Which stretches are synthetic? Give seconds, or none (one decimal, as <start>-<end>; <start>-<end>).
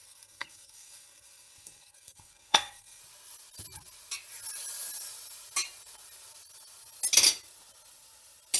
0.0-3.0